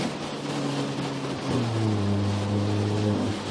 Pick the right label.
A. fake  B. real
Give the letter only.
B